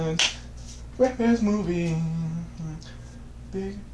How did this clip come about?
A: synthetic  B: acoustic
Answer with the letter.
B